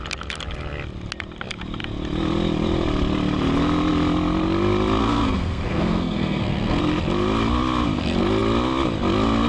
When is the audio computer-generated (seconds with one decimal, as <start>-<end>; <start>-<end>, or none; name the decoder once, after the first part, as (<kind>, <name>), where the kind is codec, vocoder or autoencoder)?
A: 5.0-6.8 (codec, SNAC)